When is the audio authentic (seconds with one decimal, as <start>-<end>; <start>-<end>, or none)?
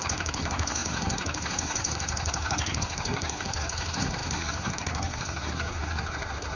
none